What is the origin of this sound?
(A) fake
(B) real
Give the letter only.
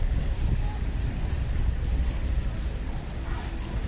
B